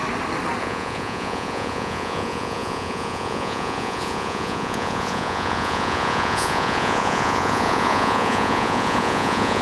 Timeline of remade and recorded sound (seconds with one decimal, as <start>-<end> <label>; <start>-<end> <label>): 0.0-0.6 recorded; 0.6-9.6 remade